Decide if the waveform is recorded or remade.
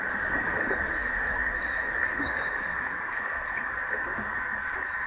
remade